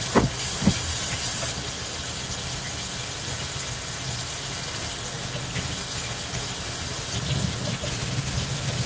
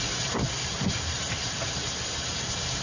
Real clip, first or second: first